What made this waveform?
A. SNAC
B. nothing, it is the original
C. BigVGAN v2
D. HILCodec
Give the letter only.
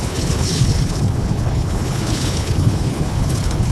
D